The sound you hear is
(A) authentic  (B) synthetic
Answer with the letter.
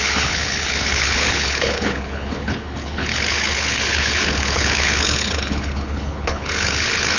B